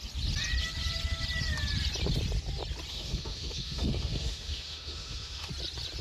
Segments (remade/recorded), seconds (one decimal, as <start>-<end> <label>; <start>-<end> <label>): 0.0-2.9 recorded; 2.9-5.5 remade; 5.5-6.0 recorded